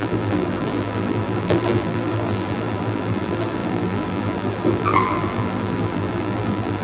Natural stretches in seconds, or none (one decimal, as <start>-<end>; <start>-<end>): none